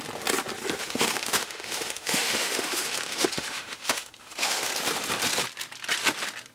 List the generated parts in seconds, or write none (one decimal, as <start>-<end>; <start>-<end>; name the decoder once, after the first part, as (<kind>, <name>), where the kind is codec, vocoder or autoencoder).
0.8-4.7 (autoencoder, DAC-VAE)